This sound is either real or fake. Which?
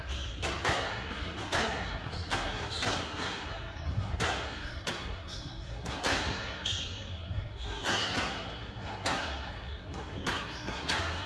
fake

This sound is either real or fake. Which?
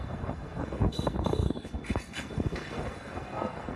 fake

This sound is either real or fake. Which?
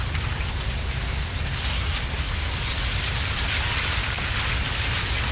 real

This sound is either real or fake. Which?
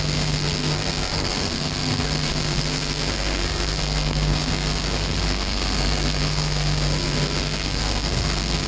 fake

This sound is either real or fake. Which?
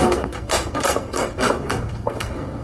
fake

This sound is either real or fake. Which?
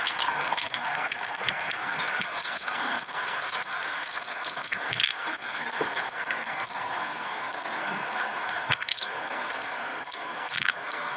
fake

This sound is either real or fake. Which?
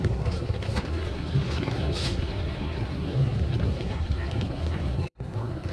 fake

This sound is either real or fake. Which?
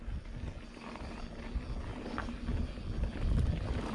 real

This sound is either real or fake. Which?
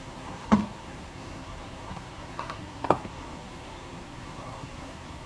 fake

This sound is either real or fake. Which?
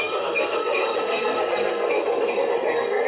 fake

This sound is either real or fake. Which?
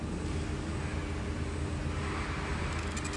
real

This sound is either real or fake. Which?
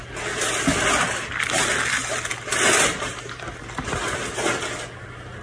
real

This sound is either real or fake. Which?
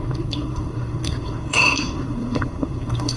fake